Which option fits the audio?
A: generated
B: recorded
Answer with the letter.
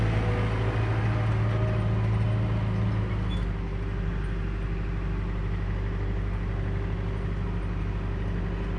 B